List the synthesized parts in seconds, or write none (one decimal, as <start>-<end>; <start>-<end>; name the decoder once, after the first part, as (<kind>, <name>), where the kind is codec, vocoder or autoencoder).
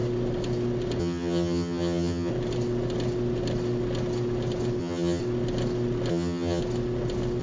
1.0-2.3 (vocoder, HiFi-GAN); 4.8-5.2; 6.1-6.6